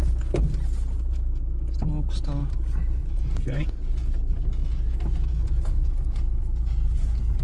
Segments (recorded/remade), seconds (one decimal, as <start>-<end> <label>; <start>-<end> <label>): 0.0-3.0 recorded; 3.0-3.7 remade; 3.7-7.4 recorded